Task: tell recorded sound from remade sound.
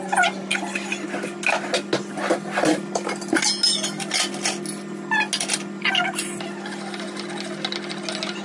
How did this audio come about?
recorded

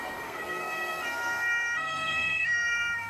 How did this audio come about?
remade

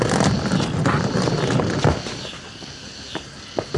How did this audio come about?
recorded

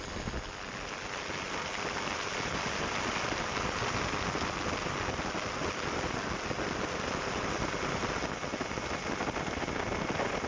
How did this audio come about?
recorded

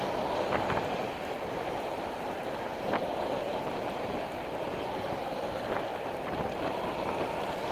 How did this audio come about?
recorded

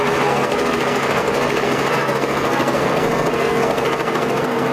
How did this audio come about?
remade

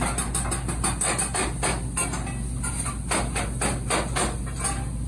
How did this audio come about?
recorded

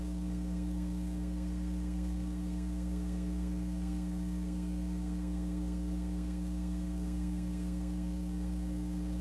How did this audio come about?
remade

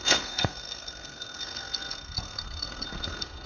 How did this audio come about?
remade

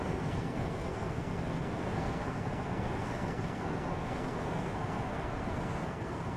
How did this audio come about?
remade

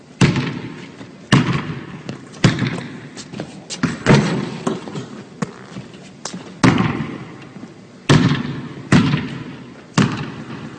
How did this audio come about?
recorded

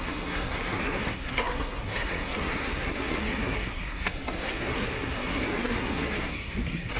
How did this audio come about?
remade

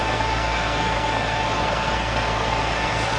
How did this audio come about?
remade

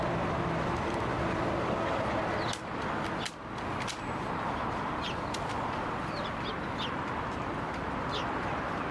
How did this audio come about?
recorded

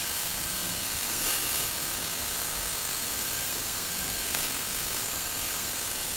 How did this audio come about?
remade